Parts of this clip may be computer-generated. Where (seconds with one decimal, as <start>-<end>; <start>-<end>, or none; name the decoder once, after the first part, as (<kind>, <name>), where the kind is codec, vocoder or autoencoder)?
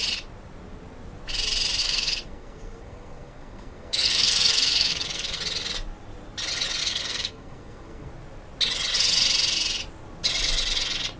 1.8-5.4 (codec, SNAC); 6.8-8.1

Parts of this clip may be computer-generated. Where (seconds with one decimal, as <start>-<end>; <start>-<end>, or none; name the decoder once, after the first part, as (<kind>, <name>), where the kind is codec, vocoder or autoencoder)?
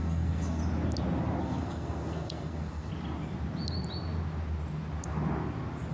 0.0-0.6 (codec, SNAC); 1.4-2.9